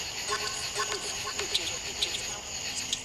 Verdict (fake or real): real